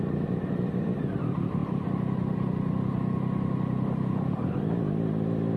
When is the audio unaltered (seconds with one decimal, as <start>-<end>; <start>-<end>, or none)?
0.0-5.6